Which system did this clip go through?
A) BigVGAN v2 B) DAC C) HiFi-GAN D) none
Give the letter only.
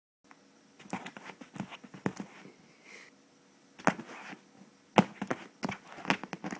D